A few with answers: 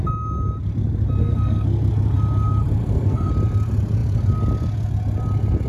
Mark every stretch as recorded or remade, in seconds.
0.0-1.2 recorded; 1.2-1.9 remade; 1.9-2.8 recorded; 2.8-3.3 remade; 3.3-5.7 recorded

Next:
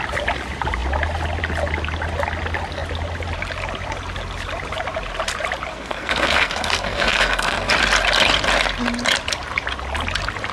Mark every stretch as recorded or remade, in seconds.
0.0-5.7 recorded; 5.7-7.7 remade; 7.7-10.5 recorded

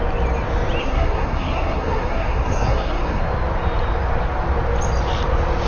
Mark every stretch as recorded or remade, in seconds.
0.0-0.8 recorded; 0.8-3.2 remade; 3.2-5.7 recorded

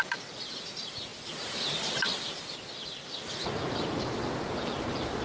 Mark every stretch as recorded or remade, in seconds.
0.0-5.2 recorded

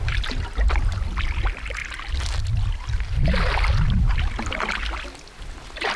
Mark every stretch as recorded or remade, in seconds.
0.0-6.0 recorded